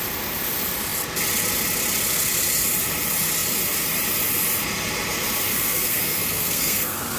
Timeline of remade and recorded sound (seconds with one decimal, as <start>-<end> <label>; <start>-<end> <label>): 0.0-5.5 recorded; 5.5-7.2 remade